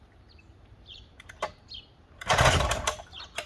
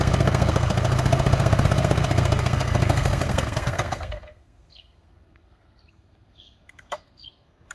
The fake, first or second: second